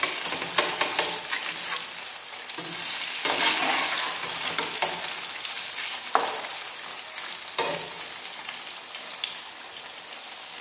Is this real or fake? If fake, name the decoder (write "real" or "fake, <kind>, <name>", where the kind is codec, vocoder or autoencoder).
real